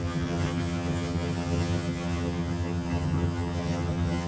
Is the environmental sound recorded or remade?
remade